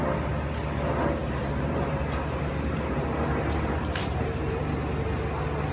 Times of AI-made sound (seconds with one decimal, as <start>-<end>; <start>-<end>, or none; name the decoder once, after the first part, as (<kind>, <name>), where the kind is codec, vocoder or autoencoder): 1.2-4.6 (vocoder, BigVGAN v2)